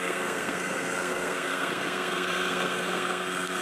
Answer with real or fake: fake